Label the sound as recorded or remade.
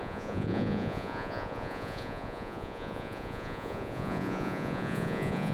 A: remade